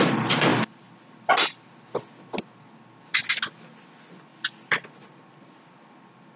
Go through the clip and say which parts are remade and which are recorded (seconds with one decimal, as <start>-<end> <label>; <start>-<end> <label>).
0.0-6.4 recorded